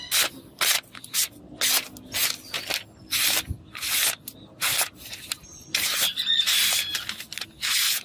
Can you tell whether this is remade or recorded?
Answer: recorded